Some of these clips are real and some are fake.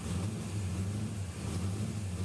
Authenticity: real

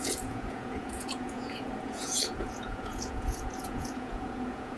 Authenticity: fake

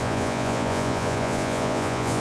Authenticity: fake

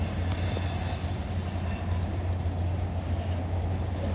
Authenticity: real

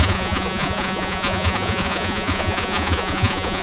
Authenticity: fake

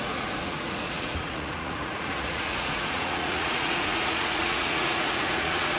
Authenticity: fake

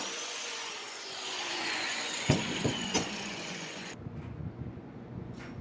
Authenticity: fake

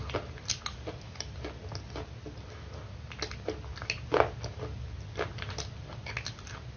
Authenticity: real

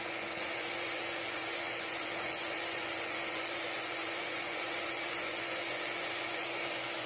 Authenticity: fake